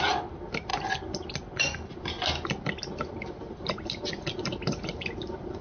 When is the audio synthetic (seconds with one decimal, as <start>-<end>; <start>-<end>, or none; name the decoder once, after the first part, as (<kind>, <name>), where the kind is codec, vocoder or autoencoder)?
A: none

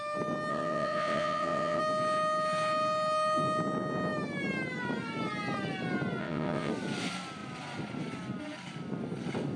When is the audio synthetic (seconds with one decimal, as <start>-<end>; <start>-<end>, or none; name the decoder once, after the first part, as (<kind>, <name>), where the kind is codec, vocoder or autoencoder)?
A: 0.5-1.8 (vocoder, WaveNeXt); 6.2-6.7

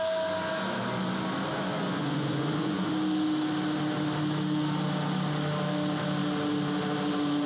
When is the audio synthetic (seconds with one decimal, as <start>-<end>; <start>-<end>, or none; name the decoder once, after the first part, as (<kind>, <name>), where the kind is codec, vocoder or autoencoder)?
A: 1.5-2.9 (vocoder, Vocos)

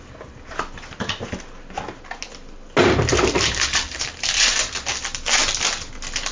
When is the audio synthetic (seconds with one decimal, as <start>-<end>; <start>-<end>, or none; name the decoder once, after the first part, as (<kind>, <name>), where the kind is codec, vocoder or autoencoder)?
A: 2.8-4.7 (vocoder, BigVGAN v2)

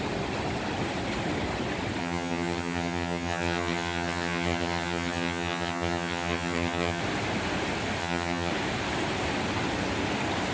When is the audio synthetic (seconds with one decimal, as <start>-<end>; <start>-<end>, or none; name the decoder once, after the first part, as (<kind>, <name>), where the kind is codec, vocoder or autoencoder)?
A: 2.0-7.0 (vocoder, HiFi-GAN); 8.0-8.5

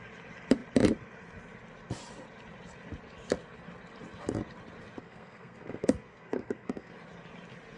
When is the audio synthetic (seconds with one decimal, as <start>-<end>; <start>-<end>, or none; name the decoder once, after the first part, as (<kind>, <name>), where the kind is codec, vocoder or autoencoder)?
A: 5.0-6.9 (codec, SNAC)

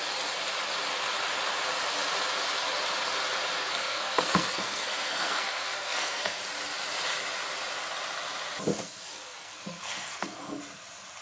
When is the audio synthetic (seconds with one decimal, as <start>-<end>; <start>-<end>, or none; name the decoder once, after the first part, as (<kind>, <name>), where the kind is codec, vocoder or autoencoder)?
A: 3.6-6.4 (codec, SNAC); 8.7-10.6

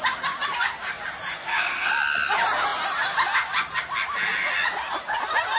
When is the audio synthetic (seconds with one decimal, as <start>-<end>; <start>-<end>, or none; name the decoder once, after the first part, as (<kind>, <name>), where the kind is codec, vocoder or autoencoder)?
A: 1.4-1.9 (codec, SNAC)